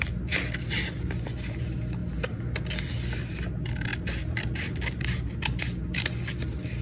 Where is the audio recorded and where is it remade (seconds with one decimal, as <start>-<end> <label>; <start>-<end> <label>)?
0.0-6.8 recorded